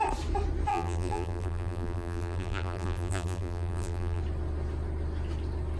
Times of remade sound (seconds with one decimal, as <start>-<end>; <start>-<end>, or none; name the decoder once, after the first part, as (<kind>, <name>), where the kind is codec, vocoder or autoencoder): 0.7-4.2 (vocoder, BigVGAN v2)